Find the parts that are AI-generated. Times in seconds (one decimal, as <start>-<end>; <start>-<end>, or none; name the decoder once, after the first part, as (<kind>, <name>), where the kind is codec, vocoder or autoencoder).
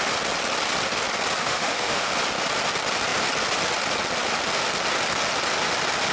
1.4-2.1 (autoencoder, DAC-VAE)